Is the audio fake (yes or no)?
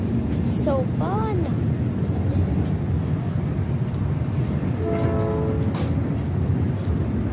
no